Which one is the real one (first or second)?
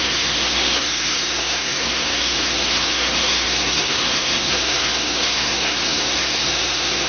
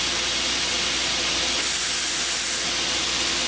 second